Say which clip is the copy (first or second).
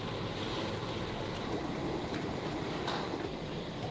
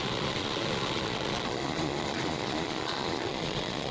second